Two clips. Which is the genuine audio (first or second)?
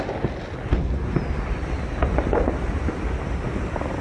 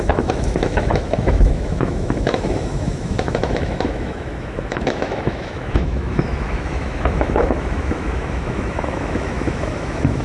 first